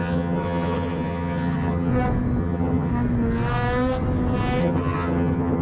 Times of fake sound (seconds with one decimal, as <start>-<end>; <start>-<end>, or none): 0.0-1.9; 2.4-2.9; 4.6-5.6